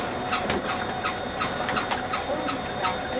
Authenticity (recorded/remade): recorded